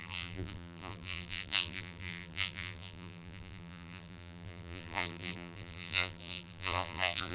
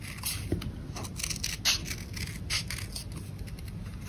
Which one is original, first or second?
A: second